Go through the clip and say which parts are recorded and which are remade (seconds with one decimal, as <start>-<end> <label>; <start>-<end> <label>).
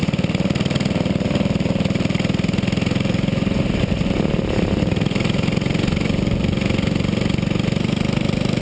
0.0-8.6 recorded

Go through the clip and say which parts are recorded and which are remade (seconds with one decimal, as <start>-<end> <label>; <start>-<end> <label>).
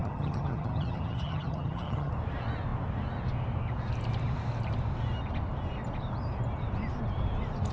0.0-2.1 remade; 2.1-7.7 recorded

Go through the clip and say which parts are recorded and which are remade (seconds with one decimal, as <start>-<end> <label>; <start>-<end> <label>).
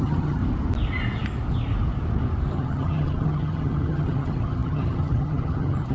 0.0-0.4 remade; 0.4-2.5 recorded; 2.5-5.9 remade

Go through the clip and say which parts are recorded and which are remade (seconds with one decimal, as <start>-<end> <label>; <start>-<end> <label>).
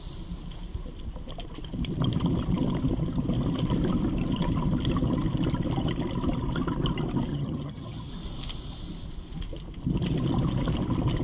0.0-7.3 recorded; 7.3-8.1 remade; 8.1-11.2 recorded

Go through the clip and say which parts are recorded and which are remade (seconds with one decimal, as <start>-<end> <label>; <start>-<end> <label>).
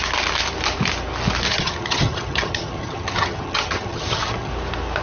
0.0-1.5 recorded; 1.5-4.5 remade; 4.5-5.0 recorded